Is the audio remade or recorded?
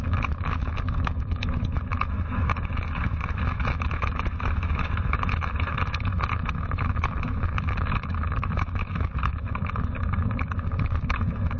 remade